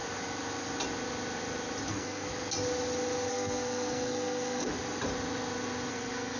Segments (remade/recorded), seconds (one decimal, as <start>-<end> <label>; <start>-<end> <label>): 0.0-1.9 recorded; 1.9-2.3 remade; 2.3-3.3 recorded; 3.3-4.7 remade; 4.7-5.9 recorded; 5.9-6.4 remade